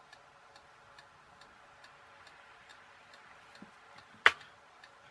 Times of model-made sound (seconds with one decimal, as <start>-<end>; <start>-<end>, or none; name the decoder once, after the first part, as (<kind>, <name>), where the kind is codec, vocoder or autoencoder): none